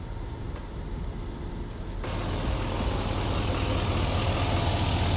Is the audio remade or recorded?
recorded